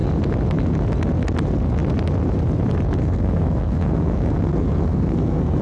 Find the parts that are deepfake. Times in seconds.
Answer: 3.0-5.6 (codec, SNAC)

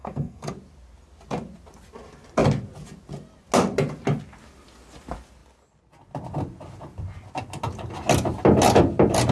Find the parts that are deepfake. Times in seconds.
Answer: 0.0-0.5 (codec, SNAC)